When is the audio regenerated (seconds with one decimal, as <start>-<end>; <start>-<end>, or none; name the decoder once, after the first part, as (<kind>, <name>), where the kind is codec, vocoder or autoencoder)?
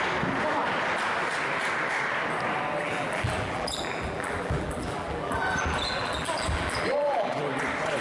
2.8-7.4 (vocoder, BigVGAN v2)